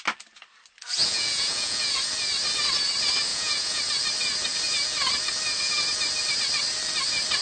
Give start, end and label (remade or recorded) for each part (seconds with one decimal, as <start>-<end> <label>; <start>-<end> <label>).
0.0-1.0 recorded; 1.0-2.0 remade; 2.0-3.3 recorded; 3.3-3.8 remade; 3.8-7.4 recorded